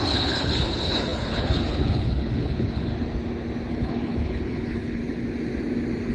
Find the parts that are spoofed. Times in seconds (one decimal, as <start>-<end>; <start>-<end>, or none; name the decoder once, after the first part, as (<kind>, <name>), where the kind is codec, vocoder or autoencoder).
0.0-2.9 (codec, HILCodec); 3.7-5.0